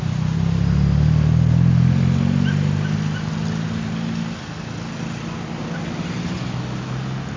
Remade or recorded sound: recorded